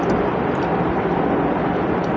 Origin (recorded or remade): recorded